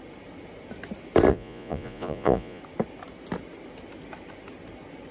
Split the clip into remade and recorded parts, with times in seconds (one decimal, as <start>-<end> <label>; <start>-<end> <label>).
0.0-1.3 recorded; 1.3-2.6 remade; 2.6-5.1 recorded